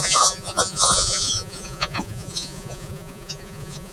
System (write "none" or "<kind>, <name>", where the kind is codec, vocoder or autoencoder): vocoder, Vocos